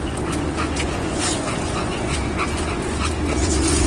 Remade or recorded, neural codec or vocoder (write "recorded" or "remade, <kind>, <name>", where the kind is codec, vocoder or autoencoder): remade, vocoder, Vocos